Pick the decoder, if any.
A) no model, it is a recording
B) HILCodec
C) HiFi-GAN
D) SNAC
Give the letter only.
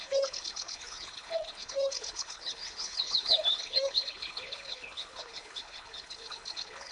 B